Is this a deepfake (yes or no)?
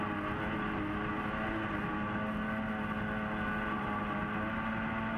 no